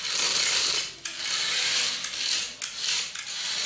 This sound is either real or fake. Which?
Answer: real